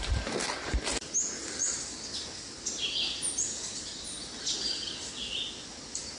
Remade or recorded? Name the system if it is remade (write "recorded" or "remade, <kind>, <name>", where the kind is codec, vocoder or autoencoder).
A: recorded